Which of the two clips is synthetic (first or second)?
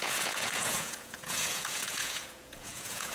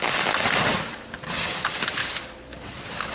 first